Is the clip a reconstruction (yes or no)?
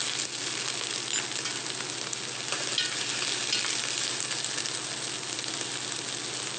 no